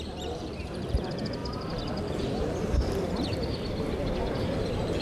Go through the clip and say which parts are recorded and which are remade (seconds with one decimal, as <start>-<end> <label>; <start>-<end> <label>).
0.0-1.4 remade; 1.4-4.4 recorded; 4.4-5.0 remade